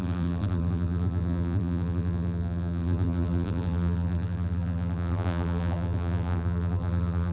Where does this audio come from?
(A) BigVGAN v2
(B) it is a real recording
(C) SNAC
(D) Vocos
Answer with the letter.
A